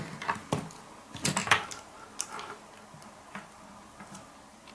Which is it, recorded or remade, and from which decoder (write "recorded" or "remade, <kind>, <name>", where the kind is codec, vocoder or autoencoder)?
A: recorded